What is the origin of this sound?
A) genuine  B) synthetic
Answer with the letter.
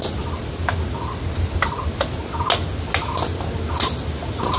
A